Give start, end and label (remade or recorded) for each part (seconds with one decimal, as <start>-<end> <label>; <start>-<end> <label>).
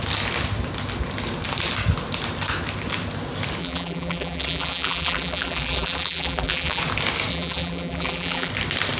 0.0-3.6 recorded; 3.6-6.8 remade; 6.8-7.3 recorded; 7.3-8.5 remade; 8.5-9.0 recorded